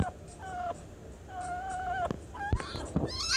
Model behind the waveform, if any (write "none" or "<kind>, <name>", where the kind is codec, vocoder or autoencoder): none